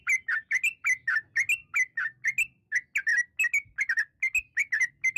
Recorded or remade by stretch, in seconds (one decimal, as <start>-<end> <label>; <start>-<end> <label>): 0.0-5.2 recorded